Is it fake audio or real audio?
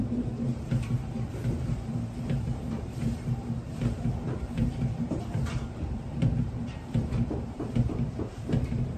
fake